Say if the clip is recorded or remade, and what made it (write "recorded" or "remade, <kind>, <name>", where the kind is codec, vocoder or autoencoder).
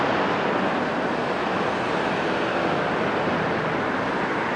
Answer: recorded